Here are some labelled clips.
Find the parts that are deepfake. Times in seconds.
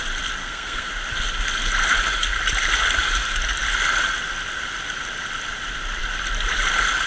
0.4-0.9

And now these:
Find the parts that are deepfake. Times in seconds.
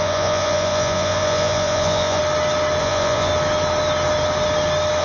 0.0-2.2; 2.8-3.3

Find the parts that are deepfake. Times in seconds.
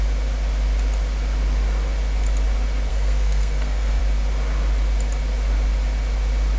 2.9-4.0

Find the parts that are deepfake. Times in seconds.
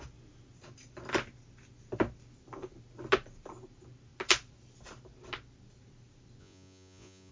6.4-7.3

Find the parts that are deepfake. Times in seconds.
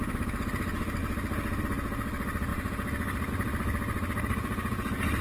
1.0-1.6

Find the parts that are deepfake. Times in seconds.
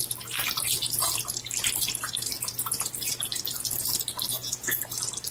4.3-4.8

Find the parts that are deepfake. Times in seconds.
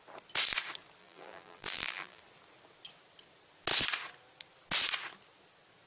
1.0-2.2